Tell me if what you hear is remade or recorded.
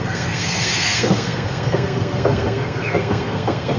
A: remade